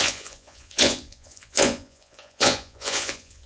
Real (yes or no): no